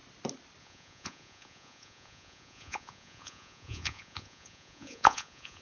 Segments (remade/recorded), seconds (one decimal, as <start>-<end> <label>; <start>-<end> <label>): 0.0-0.6 recorded; 0.6-5.6 remade